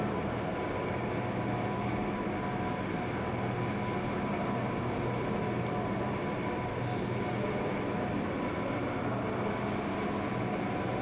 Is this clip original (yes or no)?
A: yes